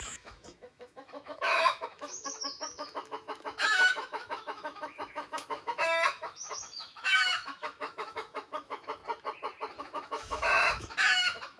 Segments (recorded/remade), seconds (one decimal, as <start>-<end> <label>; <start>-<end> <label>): 0.0-9.0 remade; 9.0-9.8 recorded; 9.8-11.6 remade